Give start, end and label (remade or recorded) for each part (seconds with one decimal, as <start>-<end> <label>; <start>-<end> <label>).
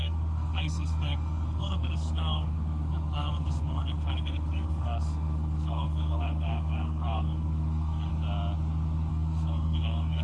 0.0-8.1 remade; 8.1-9.1 recorded; 9.1-10.2 remade